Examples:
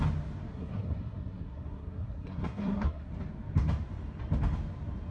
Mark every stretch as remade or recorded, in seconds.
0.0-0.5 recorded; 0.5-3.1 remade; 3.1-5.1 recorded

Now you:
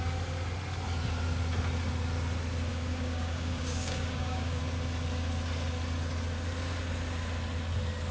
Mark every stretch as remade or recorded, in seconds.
0.0-2.7 recorded; 2.7-4.6 remade; 4.6-8.1 recorded

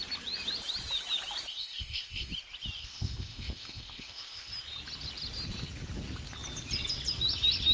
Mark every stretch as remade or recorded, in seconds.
0.0-1.5 recorded; 1.5-2.3 remade; 2.3-2.8 recorded; 2.8-4.5 remade; 4.5-7.7 recorded

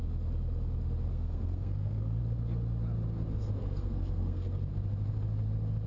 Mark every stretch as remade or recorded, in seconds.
0.0-1.1 recorded; 1.1-2.2 remade; 2.2-3.6 recorded; 3.6-4.7 remade; 4.7-5.9 recorded